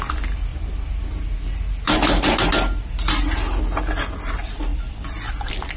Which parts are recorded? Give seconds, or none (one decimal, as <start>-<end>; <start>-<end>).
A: 0.0-5.8